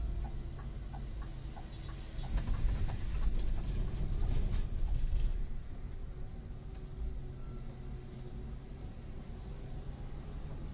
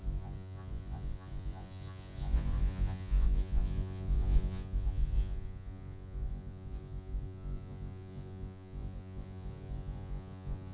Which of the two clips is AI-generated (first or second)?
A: second